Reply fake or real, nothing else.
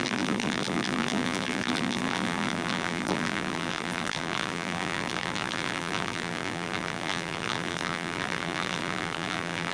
fake